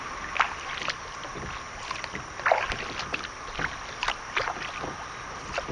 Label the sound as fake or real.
real